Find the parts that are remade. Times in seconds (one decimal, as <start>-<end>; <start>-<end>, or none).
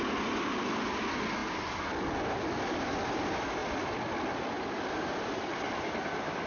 none